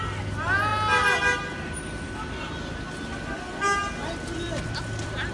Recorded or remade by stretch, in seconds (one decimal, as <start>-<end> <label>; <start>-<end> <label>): 0.0-5.3 recorded